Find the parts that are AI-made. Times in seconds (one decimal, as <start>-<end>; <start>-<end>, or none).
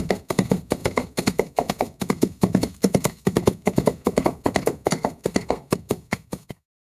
0.0-6.8